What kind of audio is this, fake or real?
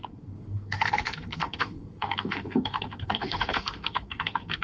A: fake